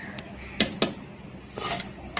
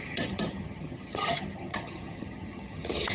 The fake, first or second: second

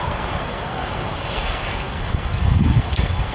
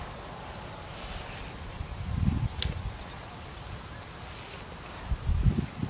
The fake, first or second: first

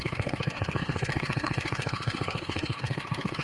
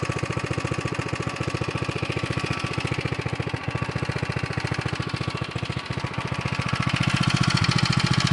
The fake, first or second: first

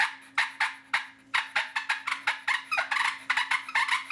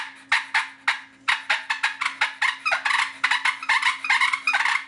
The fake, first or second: first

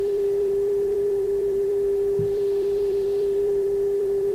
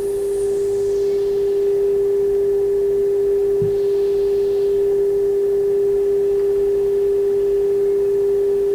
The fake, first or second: first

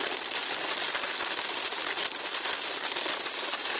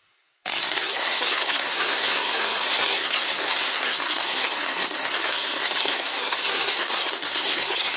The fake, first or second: second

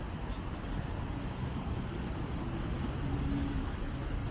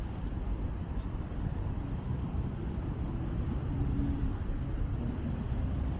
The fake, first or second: second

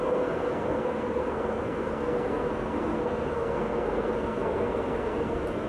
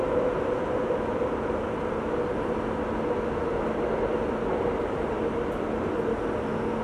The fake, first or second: first